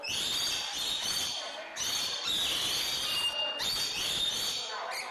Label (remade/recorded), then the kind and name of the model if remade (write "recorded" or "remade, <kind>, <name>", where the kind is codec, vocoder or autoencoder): recorded